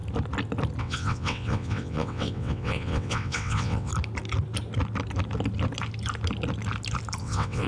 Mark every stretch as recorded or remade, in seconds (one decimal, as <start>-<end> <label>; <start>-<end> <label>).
0.0-0.8 recorded; 0.8-3.9 remade; 3.9-7.2 recorded; 7.2-7.7 remade